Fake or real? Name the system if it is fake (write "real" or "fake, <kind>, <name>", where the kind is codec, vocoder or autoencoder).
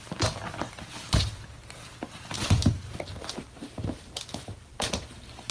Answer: real